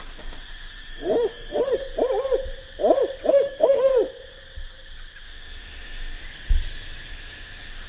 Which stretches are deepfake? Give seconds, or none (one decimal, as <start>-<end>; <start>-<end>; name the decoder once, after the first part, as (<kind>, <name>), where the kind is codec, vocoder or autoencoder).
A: 0.0-1.8 (autoencoder, DAC-VAE); 3.3-3.9; 5.2-6.2; 7.1-7.9